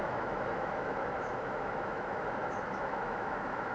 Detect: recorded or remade remade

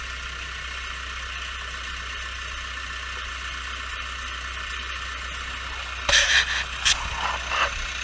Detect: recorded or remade recorded